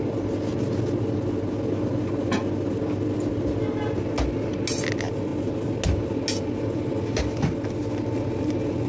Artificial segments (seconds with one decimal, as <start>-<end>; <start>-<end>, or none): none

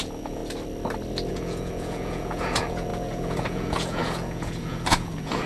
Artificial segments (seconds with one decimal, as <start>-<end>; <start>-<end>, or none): 0.0-0.4; 1.3-5.5

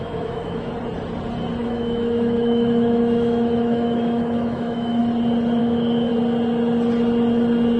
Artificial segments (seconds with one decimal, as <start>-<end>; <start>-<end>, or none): 0.0-0.7; 1.6-5.0; 5.6-6.1

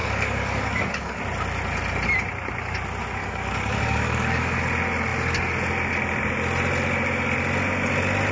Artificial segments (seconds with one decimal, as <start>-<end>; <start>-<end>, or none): 0.0-1.2; 3.2-4.6